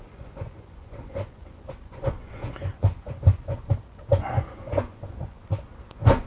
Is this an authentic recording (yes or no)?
no